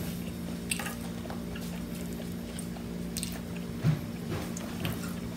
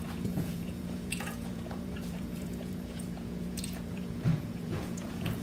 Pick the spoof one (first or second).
second